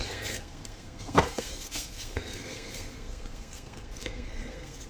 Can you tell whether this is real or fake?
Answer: fake